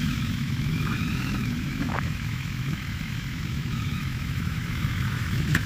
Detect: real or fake fake